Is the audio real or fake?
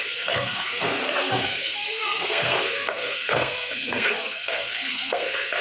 fake